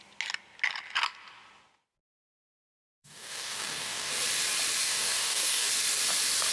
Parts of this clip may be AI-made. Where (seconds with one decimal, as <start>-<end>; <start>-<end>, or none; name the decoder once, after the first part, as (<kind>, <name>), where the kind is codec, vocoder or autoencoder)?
2.3-4.1 (codec, DAC); 4.8-5.7